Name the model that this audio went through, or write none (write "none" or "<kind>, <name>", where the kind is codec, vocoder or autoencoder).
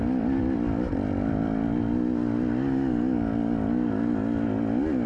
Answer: none